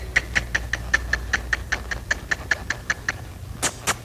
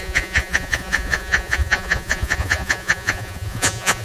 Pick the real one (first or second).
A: first